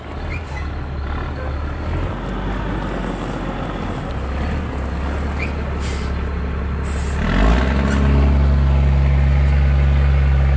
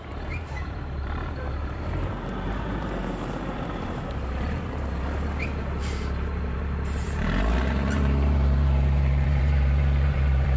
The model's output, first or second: second